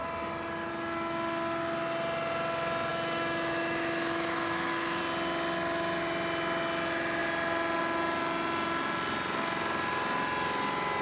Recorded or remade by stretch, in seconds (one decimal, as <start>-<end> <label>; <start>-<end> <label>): 0.0-2.9 recorded; 2.9-5.0 remade; 5.0-11.0 recorded